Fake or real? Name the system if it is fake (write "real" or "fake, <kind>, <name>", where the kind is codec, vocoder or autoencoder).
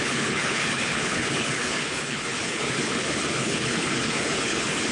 fake, codec, HILCodec